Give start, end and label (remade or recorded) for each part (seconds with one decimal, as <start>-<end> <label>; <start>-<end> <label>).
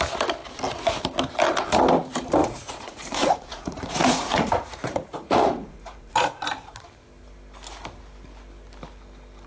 0.0-2.4 recorded; 2.4-6.4 remade; 6.4-9.5 recorded